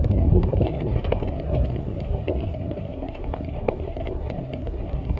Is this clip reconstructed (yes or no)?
yes